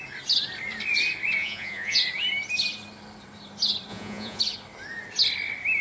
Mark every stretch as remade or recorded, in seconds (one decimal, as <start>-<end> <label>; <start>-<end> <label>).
0.0-1.4 recorded; 1.4-2.0 remade; 2.0-3.9 recorded; 3.9-4.4 remade; 4.4-5.8 recorded